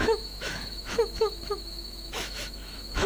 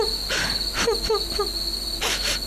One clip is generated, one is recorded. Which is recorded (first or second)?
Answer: second